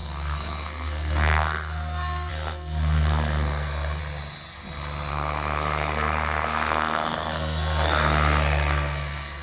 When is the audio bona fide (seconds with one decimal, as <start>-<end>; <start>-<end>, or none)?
4.0-5.1